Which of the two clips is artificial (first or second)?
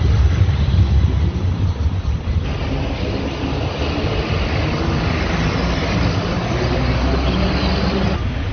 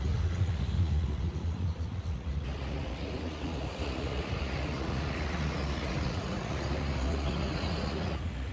second